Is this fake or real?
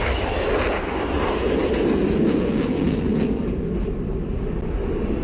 real